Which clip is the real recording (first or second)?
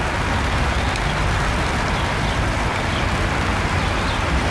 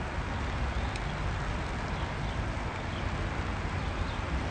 second